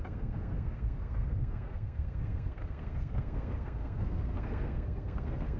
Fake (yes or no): yes